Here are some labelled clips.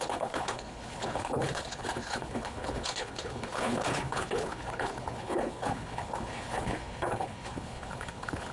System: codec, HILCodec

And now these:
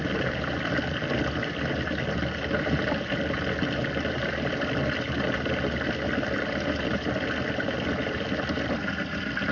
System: none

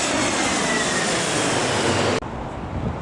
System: none